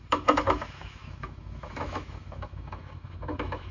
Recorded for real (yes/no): no